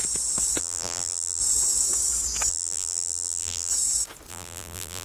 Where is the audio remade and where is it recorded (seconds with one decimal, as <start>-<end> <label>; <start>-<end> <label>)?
0.0-0.6 recorded; 0.6-1.4 remade; 1.4-2.5 recorded; 2.5-3.7 remade; 3.7-4.3 recorded; 4.3-5.0 remade